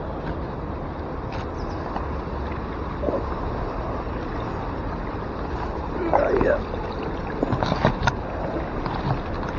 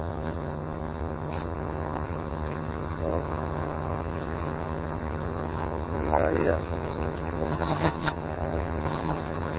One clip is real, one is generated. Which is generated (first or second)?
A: second